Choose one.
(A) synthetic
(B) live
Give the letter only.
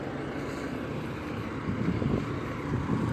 B